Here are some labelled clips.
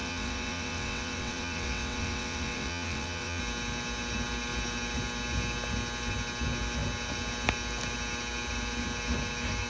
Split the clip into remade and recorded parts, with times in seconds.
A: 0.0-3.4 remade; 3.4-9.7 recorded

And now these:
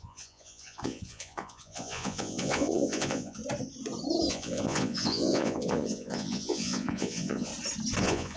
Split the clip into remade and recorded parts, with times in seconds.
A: 0.0-3.4 remade; 3.4-4.3 recorded; 4.3-7.5 remade; 7.5-8.0 recorded; 8.0-8.4 remade

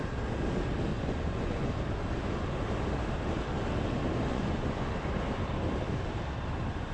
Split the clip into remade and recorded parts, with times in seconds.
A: 0.0-0.9 recorded; 0.9-1.7 remade; 1.7-4.3 recorded; 4.3-4.9 remade; 4.9-6.9 recorded

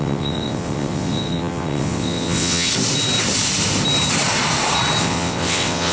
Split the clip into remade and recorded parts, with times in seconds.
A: 0.0-2.7 remade; 2.7-5.0 recorded; 5.0-5.9 remade

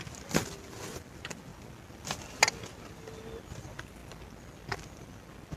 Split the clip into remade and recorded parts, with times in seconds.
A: 0.0-5.6 recorded

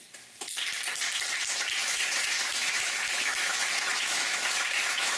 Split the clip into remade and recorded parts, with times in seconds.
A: 0.0-1.8 recorded; 1.8-5.2 remade

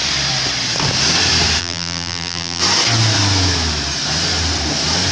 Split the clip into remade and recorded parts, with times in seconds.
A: 0.0-1.6 recorded; 1.6-2.6 remade; 2.6-5.1 recorded

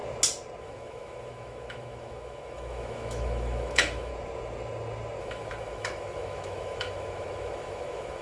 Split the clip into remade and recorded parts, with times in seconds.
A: 0.0-0.6 recorded; 0.6-4.1 remade; 4.1-5.2 recorded; 5.2-8.2 remade